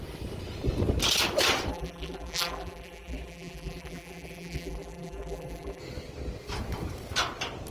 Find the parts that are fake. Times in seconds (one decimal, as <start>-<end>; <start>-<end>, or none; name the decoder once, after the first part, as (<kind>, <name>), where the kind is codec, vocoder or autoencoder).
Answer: 1.7-5.8 (vocoder, BigVGAN v2)